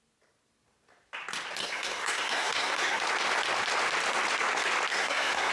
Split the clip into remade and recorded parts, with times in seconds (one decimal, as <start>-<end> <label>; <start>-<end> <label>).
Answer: 0.0-1.6 recorded; 1.6-3.0 remade; 3.0-4.9 recorded; 4.9-5.5 remade